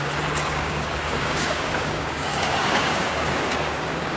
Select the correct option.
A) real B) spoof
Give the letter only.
B